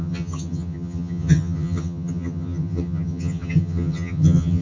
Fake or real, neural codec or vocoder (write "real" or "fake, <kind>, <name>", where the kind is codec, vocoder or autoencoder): fake, vocoder, HiFi-GAN